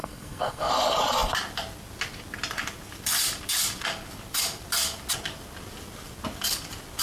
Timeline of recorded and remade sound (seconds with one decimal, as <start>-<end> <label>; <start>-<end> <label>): 0.0-0.7 remade; 0.7-7.0 recorded